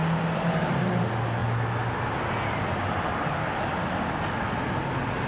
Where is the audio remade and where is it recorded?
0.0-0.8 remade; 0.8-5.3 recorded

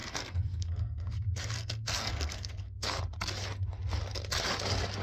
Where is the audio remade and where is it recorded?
0.0-3.0 remade; 3.0-5.0 recorded

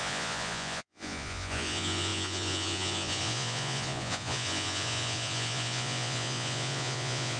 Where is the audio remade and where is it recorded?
0.0-7.4 remade

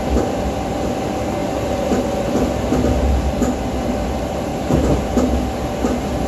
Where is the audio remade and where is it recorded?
0.0-6.3 recorded

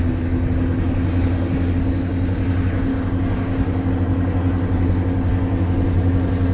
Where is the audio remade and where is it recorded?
0.0-2.9 recorded; 2.9-3.9 remade; 3.9-6.5 recorded

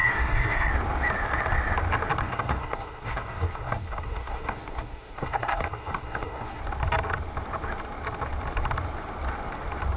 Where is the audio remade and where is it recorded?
0.0-0.7 remade; 0.7-2.2 recorded; 2.2-6.6 remade; 6.6-10.0 recorded

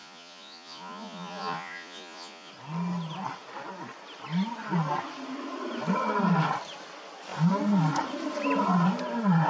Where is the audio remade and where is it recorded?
0.0-2.5 remade; 2.5-9.5 recorded